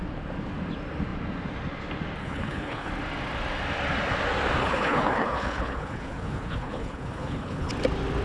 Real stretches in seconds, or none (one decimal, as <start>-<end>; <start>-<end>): 0.0-2.2; 2.9-4.6; 7.7-8.2